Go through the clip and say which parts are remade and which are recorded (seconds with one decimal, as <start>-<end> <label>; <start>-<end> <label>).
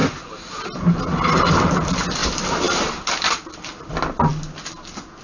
0.0-5.2 recorded